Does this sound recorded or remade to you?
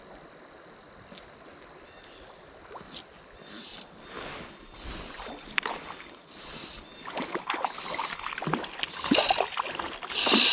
recorded